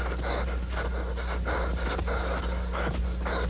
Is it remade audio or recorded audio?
recorded